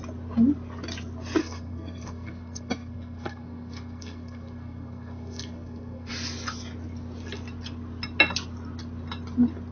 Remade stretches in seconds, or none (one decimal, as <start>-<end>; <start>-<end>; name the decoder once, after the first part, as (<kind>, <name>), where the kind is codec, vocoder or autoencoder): 1.4-6.1 (codec, SNAC)